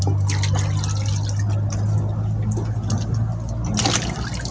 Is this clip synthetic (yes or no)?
no